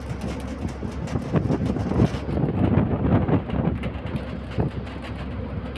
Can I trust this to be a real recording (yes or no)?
yes